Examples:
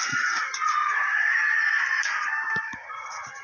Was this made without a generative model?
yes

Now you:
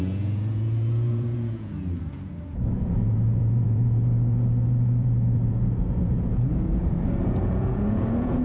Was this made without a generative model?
no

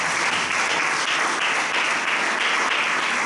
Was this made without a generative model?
yes